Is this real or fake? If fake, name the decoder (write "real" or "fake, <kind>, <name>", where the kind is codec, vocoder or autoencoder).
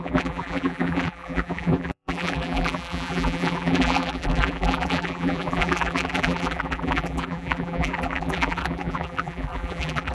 fake, vocoder, BigVGAN v2